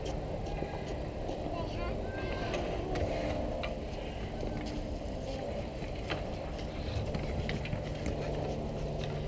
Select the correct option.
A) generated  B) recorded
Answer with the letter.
B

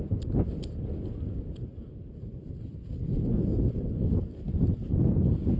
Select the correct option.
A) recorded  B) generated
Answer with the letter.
A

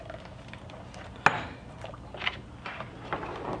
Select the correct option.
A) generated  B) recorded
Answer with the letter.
B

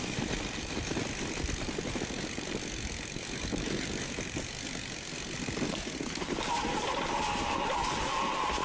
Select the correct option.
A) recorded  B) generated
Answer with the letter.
A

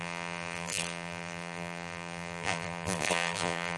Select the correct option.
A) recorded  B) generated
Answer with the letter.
B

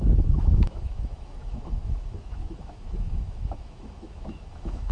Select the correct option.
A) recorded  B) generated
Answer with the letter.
B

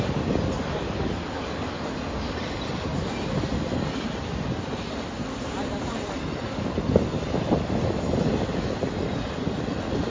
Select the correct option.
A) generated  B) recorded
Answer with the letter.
B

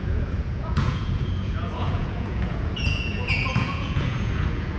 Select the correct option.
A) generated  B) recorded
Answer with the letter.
A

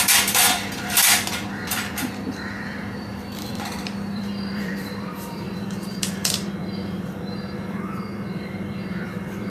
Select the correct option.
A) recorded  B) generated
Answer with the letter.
B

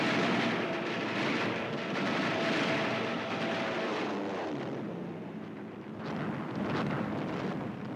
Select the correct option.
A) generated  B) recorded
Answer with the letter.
A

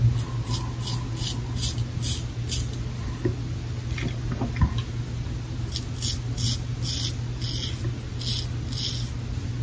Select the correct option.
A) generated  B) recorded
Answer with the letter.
B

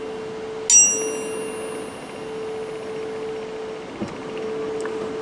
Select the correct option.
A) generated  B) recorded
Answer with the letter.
B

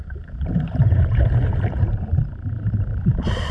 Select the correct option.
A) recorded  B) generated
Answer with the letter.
B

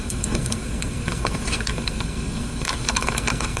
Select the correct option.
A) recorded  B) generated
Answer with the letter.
B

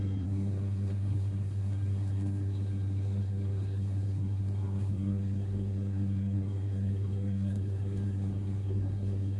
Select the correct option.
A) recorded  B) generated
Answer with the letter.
B